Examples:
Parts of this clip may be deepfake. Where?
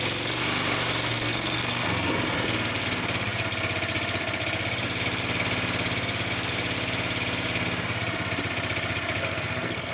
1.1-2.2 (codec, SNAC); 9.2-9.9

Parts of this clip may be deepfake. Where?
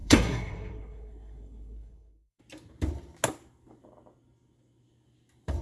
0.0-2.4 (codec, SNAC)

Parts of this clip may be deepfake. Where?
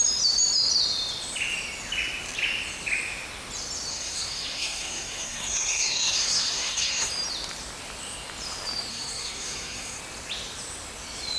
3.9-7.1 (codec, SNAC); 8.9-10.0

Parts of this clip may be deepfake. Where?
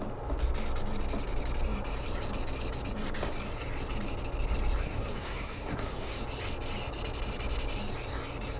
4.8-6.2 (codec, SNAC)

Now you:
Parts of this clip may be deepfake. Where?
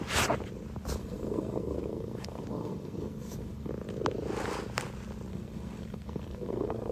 1.0-3.7 (codec, SNAC); 5.3-6.9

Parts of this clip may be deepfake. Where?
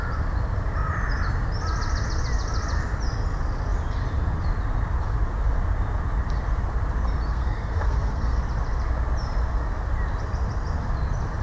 7.3-8.4 (codec, SNAC)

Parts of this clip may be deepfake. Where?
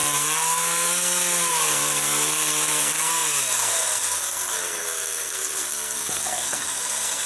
0.0-7.3 (codec, SNAC)